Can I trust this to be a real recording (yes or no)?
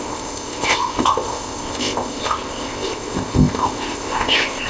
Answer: no